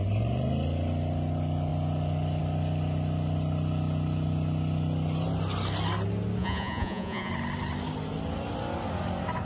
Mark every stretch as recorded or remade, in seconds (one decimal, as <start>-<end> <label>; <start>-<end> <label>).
0.0-6.4 recorded; 6.4-7.3 remade; 7.3-9.4 recorded